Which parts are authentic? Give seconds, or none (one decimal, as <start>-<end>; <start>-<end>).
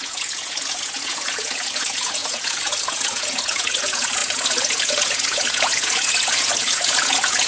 none